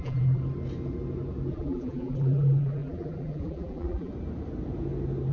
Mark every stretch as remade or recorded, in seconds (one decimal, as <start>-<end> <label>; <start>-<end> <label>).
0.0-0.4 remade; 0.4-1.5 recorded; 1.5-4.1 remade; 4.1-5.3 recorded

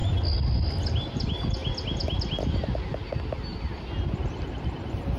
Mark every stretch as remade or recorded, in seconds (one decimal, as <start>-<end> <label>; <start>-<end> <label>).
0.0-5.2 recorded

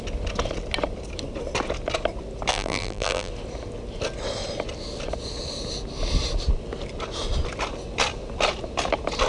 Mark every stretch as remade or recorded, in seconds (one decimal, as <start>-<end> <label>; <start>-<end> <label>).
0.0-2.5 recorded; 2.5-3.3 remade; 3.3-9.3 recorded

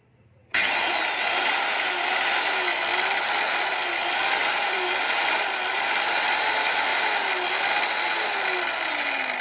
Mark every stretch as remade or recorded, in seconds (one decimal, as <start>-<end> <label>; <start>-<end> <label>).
0.0-0.4 recorded; 0.4-1.5 remade; 1.5-4.4 recorded; 4.4-4.9 remade; 4.9-9.4 recorded

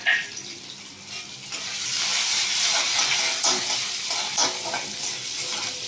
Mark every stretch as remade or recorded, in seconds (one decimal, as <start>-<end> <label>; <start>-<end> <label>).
0.0-0.6 remade; 0.6-2.1 recorded; 2.1-3.0 remade; 3.0-5.9 recorded